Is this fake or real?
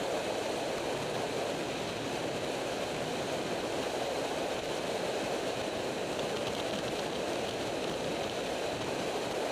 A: real